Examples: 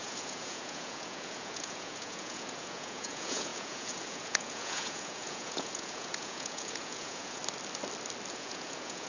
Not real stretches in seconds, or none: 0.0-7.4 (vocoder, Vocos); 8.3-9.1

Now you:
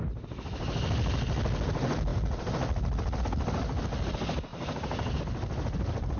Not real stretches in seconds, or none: 4.5-5.2 (vocoder, BigVGAN v2)

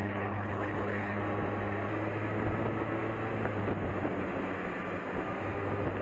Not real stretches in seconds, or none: 0.0-1.2 (codec, HILCodec)